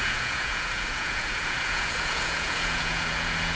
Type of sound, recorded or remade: remade